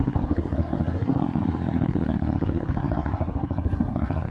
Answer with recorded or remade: remade